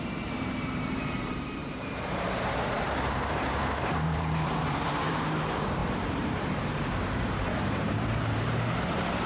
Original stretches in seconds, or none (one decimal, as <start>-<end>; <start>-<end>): none